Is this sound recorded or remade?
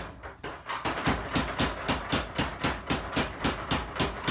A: recorded